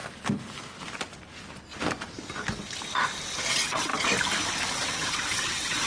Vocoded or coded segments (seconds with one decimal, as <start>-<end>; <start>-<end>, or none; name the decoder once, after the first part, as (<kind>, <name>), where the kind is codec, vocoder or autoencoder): 3.5-3.9 (vocoder, WaveNeXt); 4.7-5.9